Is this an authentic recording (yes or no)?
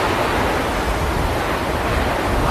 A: yes